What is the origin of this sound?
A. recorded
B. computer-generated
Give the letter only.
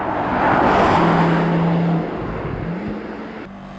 A